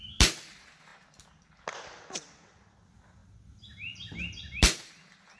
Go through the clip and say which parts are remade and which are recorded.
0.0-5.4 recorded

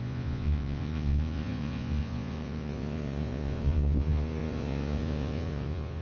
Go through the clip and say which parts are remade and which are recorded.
0.0-6.0 remade

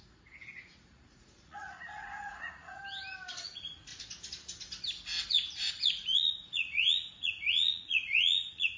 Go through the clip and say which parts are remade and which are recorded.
0.0-2.8 remade; 2.8-3.4 recorded; 3.4-3.9 remade; 3.9-5.3 recorded; 5.3-8.8 remade

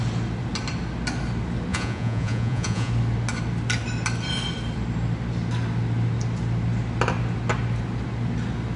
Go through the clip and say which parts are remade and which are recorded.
0.0-1.7 recorded; 1.7-2.9 remade; 2.9-8.8 recorded

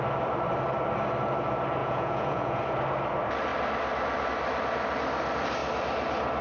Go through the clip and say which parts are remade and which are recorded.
0.0-1.8 recorded; 1.8-2.6 remade; 2.6-6.4 recorded